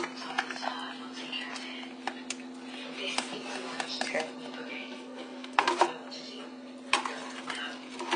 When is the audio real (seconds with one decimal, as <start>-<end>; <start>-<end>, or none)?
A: 0.0-4.7; 5.7-8.2